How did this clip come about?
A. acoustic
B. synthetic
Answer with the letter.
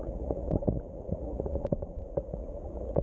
B